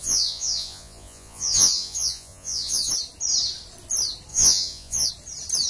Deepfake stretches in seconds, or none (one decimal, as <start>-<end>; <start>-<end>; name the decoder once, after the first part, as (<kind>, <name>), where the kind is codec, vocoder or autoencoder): 0.0-2.9 (vocoder, Vocos); 4.3-5.1